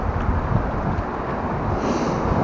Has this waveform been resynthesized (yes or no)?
no